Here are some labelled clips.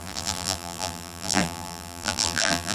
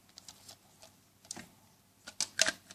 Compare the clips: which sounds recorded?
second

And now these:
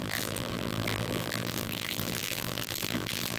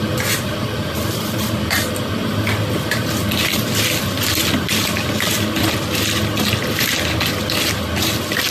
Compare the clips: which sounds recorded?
second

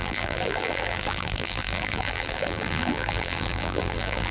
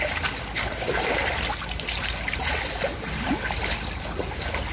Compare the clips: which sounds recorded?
second